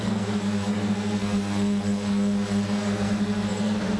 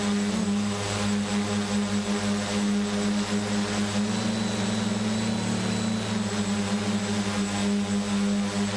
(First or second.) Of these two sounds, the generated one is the first